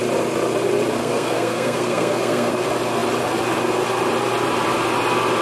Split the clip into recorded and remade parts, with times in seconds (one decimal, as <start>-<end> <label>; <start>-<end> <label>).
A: 0.0-1.0 recorded; 1.0-2.5 remade; 2.5-5.4 recorded